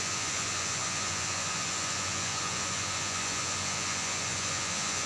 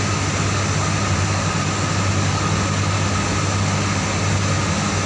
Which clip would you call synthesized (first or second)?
first